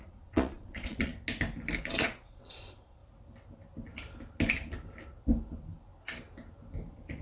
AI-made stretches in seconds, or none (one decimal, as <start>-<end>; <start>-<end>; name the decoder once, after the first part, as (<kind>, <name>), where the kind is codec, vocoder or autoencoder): 0.0-1.1 (vocoder, Vocos); 1.8-3.0